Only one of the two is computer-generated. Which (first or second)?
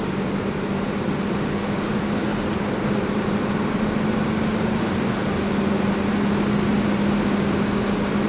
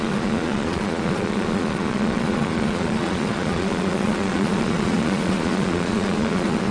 second